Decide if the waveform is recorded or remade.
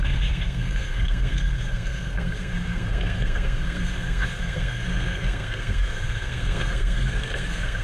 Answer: remade